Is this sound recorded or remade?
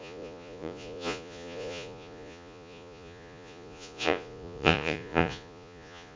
remade